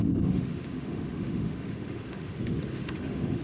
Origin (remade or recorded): remade